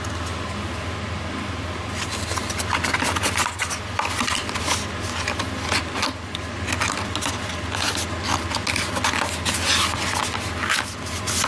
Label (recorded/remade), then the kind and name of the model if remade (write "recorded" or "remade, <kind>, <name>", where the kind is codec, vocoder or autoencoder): recorded